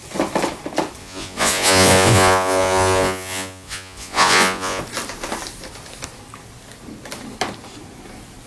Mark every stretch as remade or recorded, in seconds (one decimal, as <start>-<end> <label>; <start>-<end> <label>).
0.0-1.0 recorded; 1.0-4.8 remade; 4.8-8.5 recorded